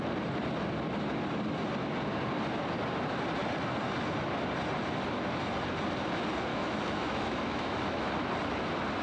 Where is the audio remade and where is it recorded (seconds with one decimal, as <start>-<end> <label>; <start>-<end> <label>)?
0.0-6.5 recorded; 6.5-8.1 remade; 8.1-9.0 recorded